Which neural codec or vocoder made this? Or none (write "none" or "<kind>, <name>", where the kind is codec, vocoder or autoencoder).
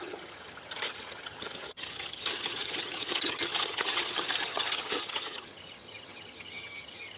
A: vocoder, HiFi-GAN